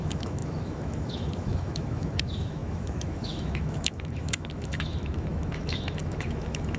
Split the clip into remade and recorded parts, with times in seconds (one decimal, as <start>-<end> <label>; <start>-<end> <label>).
0.0-6.8 remade